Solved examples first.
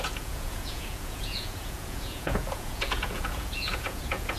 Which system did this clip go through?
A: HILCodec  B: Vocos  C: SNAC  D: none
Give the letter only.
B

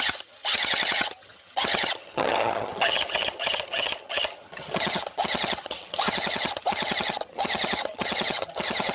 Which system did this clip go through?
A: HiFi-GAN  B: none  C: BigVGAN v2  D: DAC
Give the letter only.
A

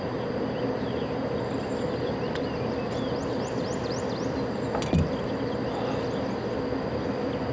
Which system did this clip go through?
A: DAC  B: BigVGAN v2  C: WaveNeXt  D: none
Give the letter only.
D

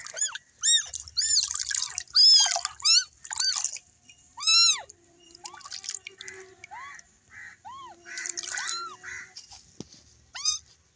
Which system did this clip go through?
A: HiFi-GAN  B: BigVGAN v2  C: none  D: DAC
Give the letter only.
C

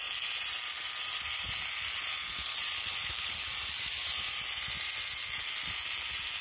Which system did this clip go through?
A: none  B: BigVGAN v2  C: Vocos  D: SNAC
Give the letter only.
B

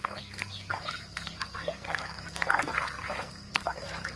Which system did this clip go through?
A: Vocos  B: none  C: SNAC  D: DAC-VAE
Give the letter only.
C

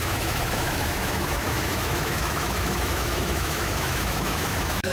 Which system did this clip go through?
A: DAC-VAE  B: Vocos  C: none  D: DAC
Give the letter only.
A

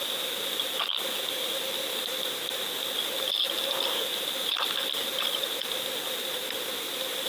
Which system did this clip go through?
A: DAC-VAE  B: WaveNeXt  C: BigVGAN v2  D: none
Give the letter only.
D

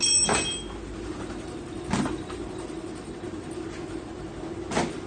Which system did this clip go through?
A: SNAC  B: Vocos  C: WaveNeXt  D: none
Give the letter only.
D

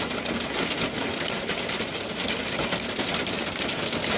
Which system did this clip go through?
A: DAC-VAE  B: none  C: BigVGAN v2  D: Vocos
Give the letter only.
B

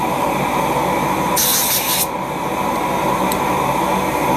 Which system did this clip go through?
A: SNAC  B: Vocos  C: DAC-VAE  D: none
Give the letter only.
D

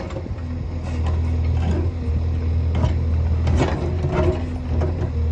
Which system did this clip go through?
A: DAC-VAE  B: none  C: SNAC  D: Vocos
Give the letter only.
B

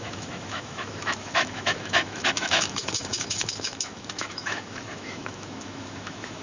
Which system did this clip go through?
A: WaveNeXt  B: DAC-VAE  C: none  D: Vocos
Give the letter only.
B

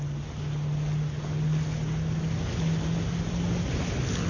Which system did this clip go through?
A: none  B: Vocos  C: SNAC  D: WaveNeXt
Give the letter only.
A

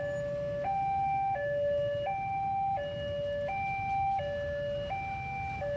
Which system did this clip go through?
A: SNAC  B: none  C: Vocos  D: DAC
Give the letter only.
B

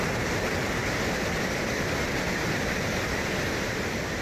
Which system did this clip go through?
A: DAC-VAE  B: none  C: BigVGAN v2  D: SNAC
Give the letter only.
B